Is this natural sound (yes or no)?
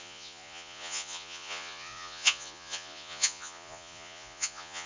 no